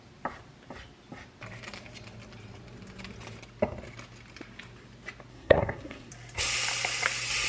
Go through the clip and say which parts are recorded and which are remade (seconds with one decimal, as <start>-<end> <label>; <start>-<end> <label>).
0.0-5.3 recorded; 5.3-6.1 remade; 6.1-7.5 recorded